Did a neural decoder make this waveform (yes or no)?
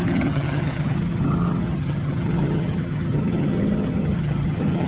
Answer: yes